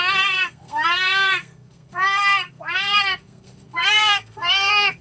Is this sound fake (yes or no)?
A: yes